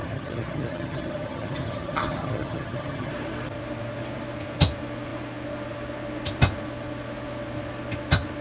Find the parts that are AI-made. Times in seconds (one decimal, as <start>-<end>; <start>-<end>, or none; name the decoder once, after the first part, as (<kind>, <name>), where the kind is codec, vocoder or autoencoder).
0.0-3.1 (vocoder, HiFi-GAN)